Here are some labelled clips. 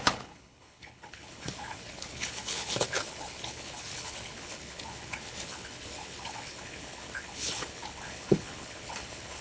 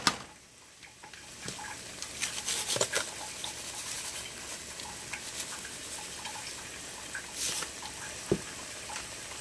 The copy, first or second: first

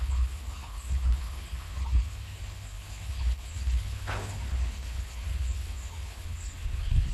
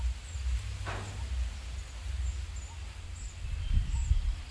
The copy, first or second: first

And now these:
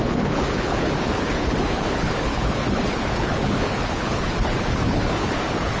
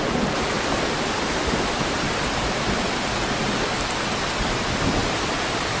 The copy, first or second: first